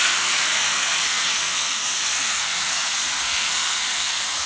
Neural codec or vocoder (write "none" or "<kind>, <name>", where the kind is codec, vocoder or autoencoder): codec, SNAC